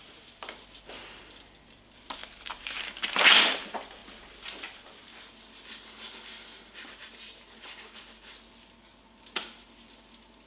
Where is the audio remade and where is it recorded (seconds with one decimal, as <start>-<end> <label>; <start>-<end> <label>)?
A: 0.0-10.5 recorded